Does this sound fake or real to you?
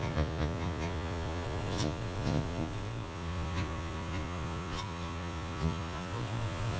fake